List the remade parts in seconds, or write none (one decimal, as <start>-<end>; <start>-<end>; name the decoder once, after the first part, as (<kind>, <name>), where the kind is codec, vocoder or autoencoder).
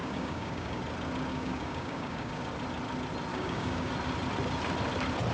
0.0-0.8 (codec, DAC); 1.3-2.4; 3.3-3.9